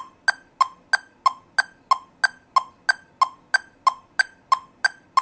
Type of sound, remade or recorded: recorded